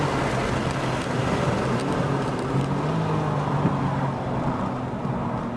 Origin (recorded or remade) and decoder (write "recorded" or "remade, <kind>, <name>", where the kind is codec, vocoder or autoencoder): recorded